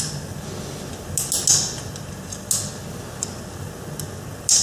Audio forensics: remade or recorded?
recorded